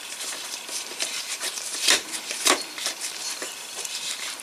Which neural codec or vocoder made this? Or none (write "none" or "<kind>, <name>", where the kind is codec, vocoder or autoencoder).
vocoder, BigVGAN v2